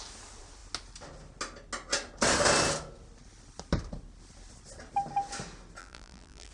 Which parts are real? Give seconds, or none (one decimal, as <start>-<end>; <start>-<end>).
0.0-5.8